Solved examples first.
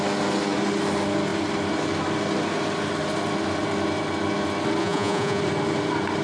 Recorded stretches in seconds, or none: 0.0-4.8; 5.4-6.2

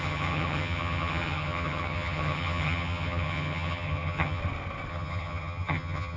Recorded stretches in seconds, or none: 4.4-4.9

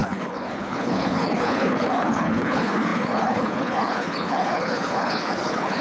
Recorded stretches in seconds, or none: none

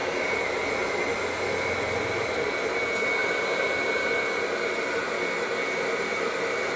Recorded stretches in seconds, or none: 2.5-3.2; 3.7-6.8

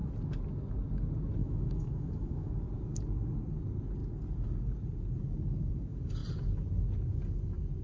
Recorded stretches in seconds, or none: 0.0-1.4; 2.5-7.8

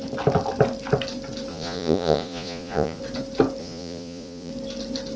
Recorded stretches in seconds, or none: 0.0-1.5; 3.0-3.6; 4.5-5.2

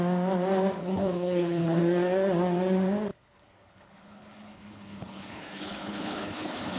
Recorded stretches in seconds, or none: 0.0-0.8; 1.8-3.1

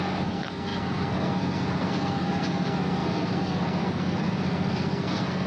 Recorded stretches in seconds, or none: none